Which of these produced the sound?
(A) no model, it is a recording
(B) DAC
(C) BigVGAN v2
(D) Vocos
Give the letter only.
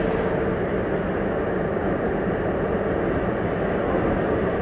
A